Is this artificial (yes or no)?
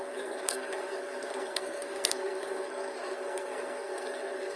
yes